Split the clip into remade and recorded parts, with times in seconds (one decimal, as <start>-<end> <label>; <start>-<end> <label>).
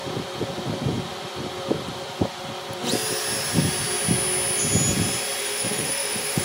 0.0-5.4 recorded; 5.4-6.4 remade